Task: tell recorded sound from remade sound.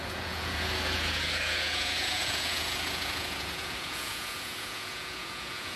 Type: remade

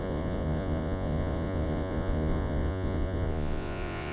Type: remade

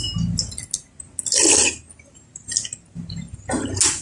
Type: recorded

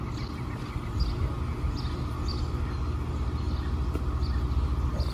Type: recorded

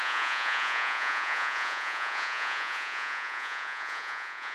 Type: remade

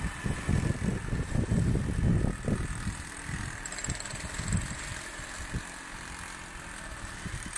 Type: recorded